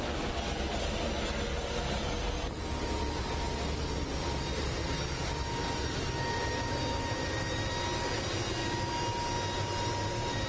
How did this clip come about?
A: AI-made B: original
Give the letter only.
B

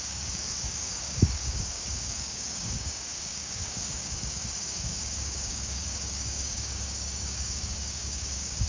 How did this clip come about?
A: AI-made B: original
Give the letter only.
A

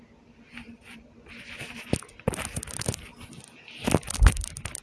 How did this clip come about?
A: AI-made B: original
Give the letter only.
B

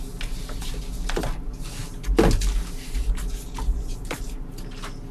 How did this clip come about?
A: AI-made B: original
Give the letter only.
B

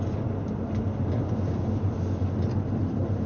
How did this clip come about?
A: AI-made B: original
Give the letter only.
B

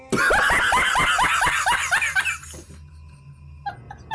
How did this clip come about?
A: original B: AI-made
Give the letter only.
A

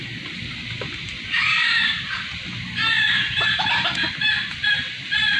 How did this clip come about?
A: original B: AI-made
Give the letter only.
B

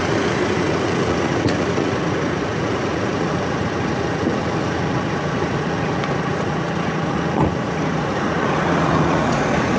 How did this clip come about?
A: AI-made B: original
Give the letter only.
A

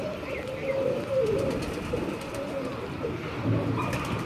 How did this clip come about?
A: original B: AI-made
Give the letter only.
A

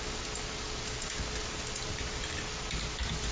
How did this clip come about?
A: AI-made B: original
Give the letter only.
B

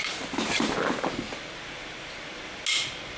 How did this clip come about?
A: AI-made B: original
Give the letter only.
B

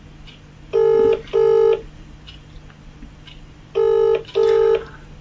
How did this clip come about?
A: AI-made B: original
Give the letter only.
B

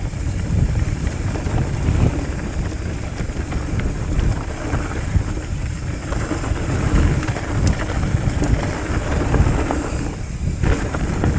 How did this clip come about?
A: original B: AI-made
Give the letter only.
A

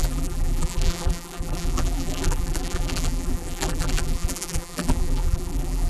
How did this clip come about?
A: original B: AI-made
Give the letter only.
B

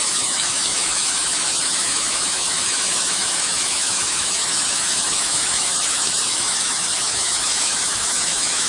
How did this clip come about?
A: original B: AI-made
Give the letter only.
B